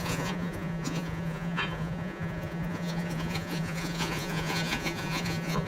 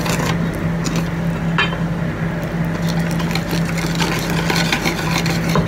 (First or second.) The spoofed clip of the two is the first